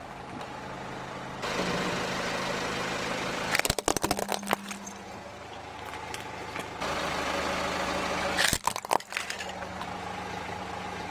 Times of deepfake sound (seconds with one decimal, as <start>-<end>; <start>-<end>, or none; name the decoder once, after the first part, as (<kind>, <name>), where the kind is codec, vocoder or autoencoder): none